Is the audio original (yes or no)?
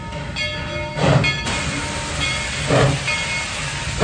yes